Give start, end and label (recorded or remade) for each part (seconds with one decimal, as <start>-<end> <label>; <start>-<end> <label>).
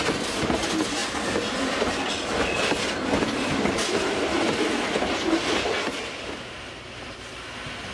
0.0-7.9 recorded